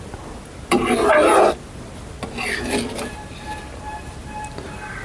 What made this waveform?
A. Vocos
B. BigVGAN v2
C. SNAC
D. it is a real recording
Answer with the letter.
D